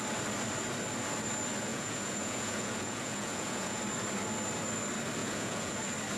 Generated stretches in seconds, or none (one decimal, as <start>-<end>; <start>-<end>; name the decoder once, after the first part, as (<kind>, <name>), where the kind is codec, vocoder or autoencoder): 1.7-3.8 (vocoder, Vocos); 5.2-5.8